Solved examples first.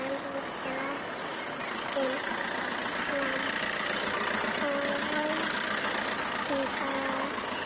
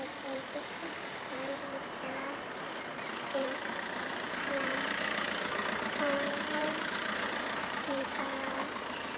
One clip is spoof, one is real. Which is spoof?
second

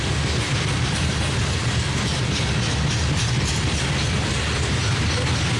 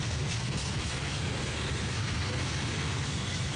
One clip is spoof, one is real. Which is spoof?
second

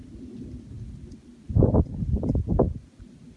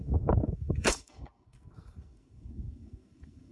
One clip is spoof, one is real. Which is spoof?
second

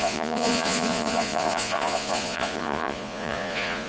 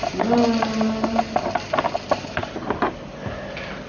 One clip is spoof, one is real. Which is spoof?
first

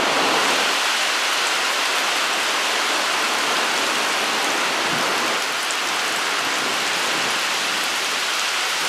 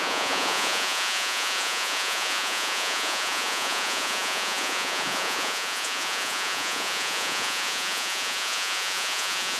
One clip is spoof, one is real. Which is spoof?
second